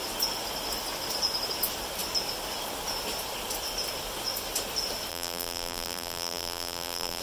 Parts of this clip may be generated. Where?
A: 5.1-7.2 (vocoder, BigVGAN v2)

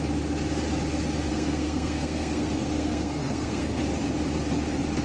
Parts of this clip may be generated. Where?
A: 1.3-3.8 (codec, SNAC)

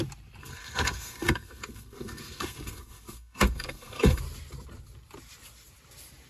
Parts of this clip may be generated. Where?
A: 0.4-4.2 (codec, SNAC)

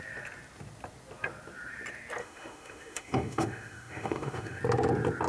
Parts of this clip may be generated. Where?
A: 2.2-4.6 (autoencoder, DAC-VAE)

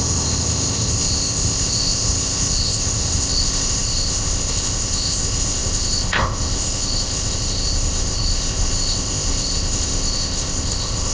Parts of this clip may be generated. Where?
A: 0.0-11.1 (codec, ZipCodec)

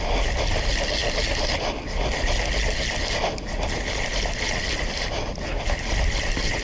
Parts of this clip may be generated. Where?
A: none

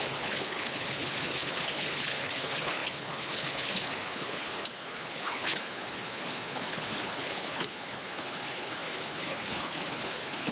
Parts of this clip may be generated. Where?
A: 0.0-10.5 (codec, HILCodec)